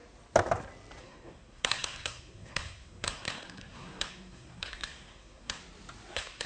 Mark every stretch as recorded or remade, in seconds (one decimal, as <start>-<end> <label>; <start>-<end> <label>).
0.0-1.0 recorded; 1.0-5.6 remade; 5.6-6.1 recorded; 6.1-6.5 remade